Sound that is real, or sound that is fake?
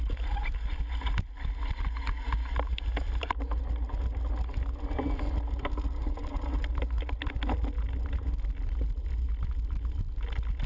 real